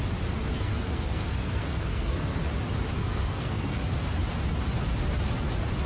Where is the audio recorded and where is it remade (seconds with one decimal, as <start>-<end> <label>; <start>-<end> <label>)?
0.0-0.5 recorded; 0.5-2.4 remade; 2.4-3.0 recorded; 3.0-3.8 remade; 3.8-5.9 recorded